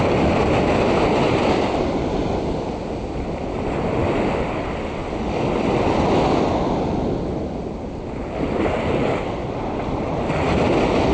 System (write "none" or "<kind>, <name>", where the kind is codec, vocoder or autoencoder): none